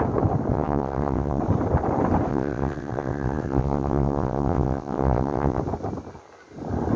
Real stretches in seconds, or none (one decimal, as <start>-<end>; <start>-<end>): 0.0-0.5; 1.4-2.3; 5.6-7.0